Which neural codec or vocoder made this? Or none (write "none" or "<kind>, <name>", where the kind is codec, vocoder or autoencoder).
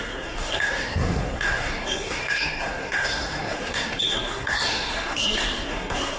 codec, SNAC